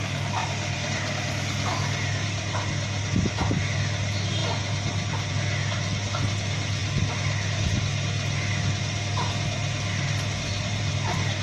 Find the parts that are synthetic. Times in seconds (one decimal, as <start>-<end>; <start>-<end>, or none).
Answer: 0.4-1.3; 9.6-10.9